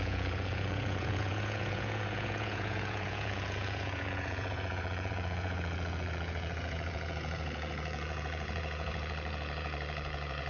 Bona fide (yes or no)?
no